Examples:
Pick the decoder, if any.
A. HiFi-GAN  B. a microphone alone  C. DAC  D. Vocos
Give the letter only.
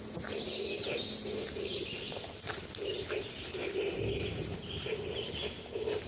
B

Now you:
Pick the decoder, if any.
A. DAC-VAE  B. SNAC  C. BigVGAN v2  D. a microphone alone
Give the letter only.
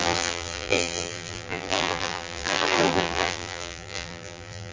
C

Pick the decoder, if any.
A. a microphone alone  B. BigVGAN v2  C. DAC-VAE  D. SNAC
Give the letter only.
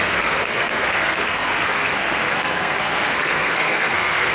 D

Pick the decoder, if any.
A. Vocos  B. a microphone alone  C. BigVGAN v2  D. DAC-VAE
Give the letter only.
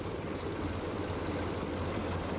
B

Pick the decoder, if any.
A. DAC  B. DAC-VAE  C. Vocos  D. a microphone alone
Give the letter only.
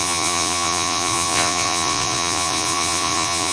C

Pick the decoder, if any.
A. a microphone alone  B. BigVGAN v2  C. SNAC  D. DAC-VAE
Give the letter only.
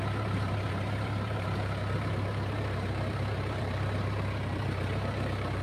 B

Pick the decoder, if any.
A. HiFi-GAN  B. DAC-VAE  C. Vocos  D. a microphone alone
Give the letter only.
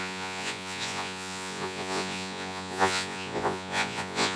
C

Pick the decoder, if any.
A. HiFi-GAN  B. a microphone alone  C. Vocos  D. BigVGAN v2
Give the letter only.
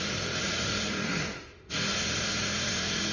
C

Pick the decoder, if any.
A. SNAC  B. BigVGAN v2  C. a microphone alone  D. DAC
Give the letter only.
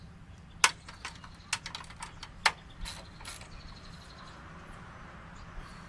C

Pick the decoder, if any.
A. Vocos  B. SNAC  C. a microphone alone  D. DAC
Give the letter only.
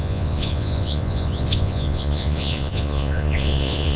A